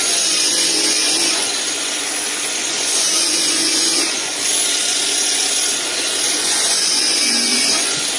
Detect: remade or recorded remade